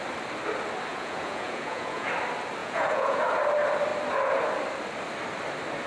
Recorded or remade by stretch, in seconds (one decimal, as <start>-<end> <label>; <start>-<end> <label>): 0.0-0.9 recorded; 0.9-2.1 remade; 2.1-2.6 recorded; 2.6-3.2 remade; 3.2-5.9 recorded

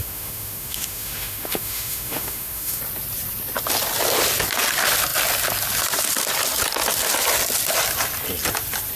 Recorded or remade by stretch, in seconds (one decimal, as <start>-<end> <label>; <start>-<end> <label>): 0.0-2.8 remade; 2.8-9.0 recorded

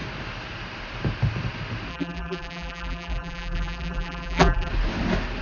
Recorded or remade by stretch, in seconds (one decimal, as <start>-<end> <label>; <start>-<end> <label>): 0.0-1.9 recorded; 1.9-4.7 remade; 4.7-5.4 recorded

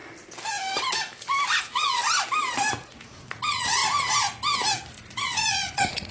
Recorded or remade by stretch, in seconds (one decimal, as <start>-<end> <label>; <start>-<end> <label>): 0.0-1.6 recorded; 1.6-2.0 remade; 2.0-2.6 recorded; 2.6-3.8 remade; 3.8-4.9 recorded; 4.9-6.1 remade